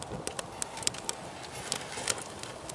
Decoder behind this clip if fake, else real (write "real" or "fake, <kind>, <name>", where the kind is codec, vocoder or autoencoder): real